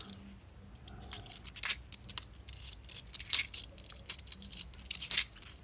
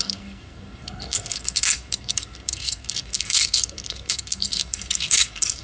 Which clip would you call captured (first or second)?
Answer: first